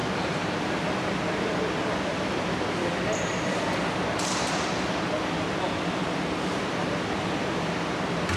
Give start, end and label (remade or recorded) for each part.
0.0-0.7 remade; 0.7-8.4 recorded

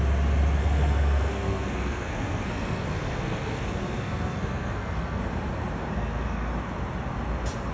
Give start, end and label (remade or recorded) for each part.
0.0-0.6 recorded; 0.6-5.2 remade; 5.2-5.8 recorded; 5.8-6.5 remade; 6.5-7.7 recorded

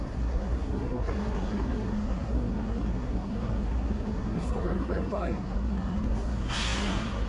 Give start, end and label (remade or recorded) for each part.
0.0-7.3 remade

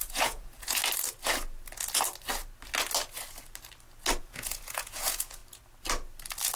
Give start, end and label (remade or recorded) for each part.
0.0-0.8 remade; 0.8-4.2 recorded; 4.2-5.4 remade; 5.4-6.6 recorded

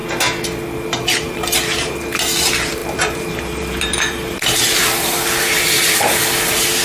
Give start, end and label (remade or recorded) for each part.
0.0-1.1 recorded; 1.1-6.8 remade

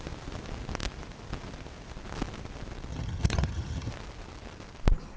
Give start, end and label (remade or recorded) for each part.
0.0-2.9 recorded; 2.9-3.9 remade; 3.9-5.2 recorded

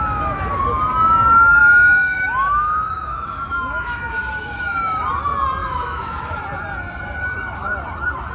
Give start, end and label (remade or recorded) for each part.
0.0-1.6 recorded; 1.6-5.0 remade; 5.0-5.6 recorded; 5.6-6.4 remade; 6.4-8.3 recorded